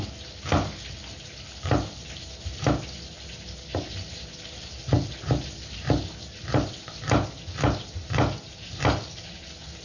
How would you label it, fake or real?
real